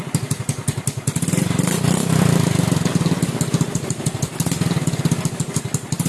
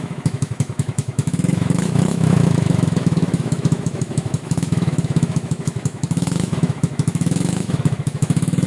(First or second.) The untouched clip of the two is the first